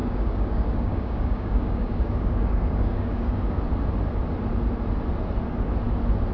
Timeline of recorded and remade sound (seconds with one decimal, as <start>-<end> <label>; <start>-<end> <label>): 0.0-3.4 remade; 3.4-6.3 recorded